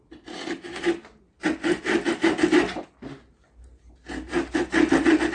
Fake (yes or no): no